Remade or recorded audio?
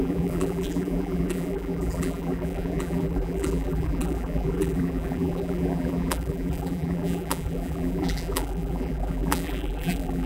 remade